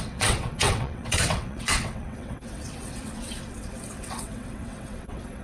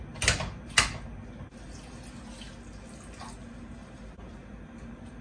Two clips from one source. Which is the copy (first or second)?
first